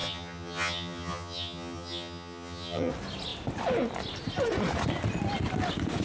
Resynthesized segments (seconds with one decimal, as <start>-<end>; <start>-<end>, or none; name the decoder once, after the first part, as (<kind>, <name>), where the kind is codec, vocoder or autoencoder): 0.0-2.9 (vocoder, HiFi-GAN)